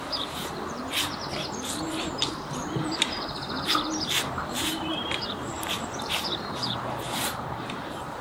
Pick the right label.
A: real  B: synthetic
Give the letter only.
B